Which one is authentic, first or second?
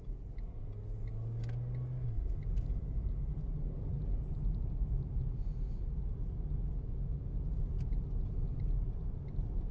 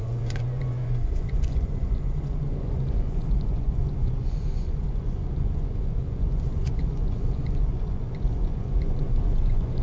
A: first